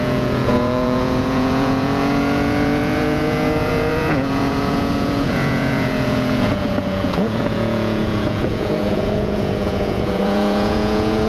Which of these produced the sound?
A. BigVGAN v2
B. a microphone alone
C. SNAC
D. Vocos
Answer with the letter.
D